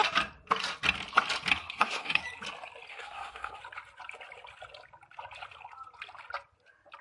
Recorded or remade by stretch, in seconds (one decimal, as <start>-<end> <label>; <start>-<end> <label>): 0.0-1.6 recorded; 1.6-2.2 remade; 2.2-2.9 recorded; 2.9-3.6 remade; 3.6-7.0 recorded